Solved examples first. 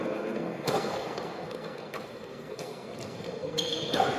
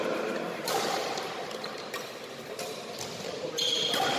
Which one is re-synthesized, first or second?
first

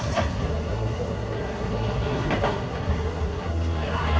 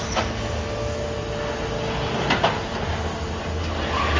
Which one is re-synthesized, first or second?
first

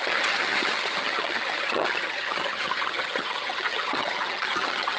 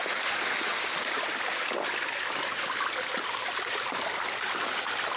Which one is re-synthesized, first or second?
first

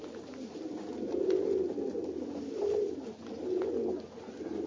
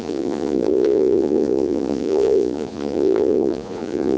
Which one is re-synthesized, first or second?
second